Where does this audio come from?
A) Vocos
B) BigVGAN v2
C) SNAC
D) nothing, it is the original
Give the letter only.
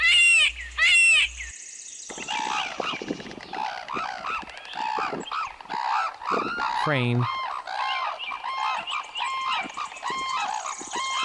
D